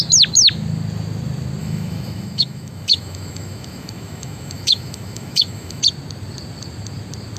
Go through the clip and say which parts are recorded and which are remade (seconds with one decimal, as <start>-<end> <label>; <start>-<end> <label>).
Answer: 0.0-1.6 recorded; 1.6-5.8 remade; 5.8-7.4 recorded